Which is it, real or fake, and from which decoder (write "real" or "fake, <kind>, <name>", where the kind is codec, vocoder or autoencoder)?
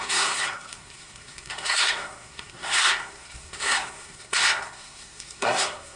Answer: fake, codec, SNAC